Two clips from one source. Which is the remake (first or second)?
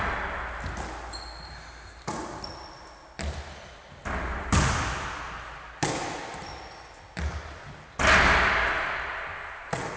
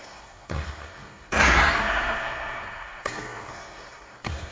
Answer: second